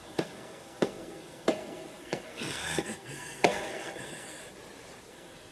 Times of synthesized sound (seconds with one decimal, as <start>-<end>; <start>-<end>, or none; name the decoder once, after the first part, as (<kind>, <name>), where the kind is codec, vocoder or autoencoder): 0.0-4.4 (codec, SNAC); 5.1-5.5

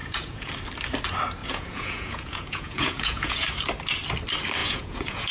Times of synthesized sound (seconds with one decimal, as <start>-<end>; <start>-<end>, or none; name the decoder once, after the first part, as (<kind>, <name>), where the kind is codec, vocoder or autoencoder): 0.0-0.5 (vocoder, Vocos); 1.4-3.5; 4.6-5.3

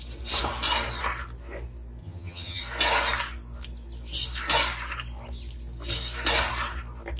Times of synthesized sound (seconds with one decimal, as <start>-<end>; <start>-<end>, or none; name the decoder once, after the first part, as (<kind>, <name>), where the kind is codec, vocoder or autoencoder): 2.0-2.6 (vocoder, HiFi-GAN)

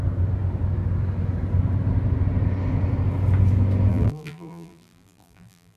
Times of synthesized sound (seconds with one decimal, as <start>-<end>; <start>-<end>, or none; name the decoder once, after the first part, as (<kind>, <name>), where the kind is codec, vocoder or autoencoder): 3.9-5.8 (vocoder, BigVGAN v2)

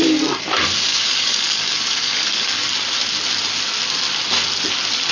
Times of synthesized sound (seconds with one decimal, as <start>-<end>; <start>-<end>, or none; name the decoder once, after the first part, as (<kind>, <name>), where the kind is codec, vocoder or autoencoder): 0.9-2.7 (codec, DAC)